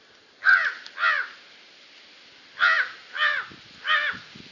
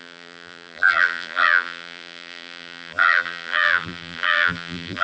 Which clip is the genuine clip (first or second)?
first